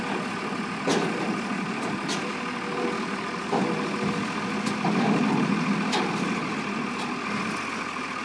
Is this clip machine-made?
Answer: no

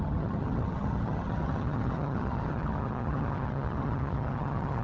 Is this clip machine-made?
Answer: yes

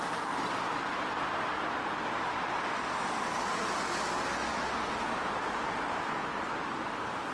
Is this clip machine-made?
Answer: no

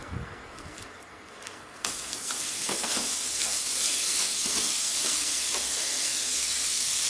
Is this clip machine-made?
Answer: yes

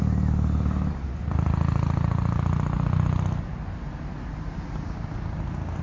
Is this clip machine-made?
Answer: no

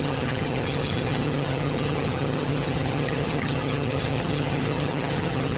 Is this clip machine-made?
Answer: yes